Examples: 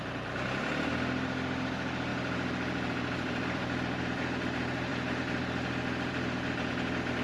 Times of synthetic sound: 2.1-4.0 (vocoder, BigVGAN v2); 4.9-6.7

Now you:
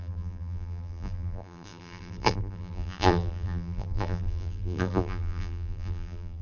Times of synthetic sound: 0.0-6.4 (vocoder, BigVGAN v2)

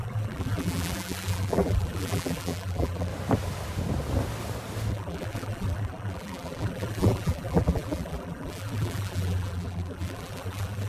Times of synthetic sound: 0.0-3.1 (vocoder, BigVGAN v2); 4.9-10.9